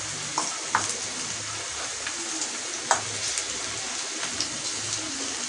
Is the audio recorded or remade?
recorded